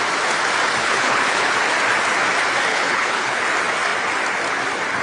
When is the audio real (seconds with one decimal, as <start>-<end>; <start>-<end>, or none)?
0.0-0.8; 1.5-2.7; 3.4-5.0